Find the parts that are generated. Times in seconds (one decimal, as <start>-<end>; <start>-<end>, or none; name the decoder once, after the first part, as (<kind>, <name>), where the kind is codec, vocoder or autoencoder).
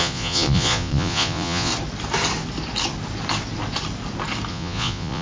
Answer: 0.0-1.7 (vocoder, Vocos); 4.5-5.2